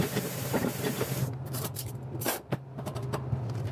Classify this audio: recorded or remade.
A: remade